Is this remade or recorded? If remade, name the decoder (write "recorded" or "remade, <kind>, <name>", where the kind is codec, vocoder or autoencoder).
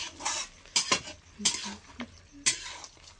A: recorded